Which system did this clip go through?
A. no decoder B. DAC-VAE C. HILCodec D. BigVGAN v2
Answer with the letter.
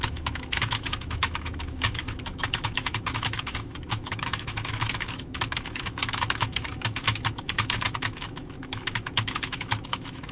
B